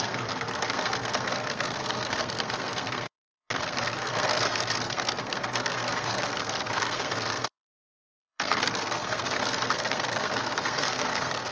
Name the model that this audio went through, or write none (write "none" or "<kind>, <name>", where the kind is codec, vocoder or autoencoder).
codec, SNAC